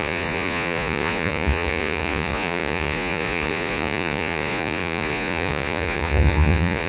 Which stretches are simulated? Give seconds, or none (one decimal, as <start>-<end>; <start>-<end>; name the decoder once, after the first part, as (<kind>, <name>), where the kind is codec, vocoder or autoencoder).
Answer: 0.0-6.9 (vocoder, Vocos)